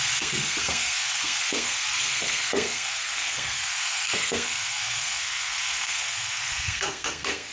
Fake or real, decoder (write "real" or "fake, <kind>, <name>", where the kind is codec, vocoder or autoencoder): fake, codec, SNAC